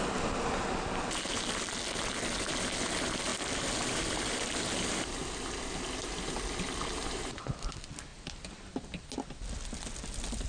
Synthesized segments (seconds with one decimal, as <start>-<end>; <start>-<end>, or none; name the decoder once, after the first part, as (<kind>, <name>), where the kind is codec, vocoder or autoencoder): none